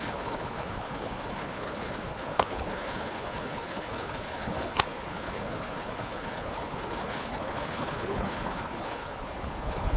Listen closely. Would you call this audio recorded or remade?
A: remade